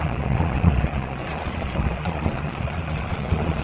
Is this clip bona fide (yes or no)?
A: no